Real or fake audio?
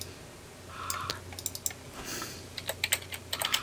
real